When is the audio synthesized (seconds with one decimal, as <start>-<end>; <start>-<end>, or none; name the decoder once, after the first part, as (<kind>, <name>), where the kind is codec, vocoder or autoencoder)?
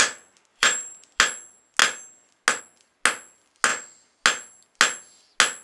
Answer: 0.5-1.2 (vocoder, BigVGAN v2)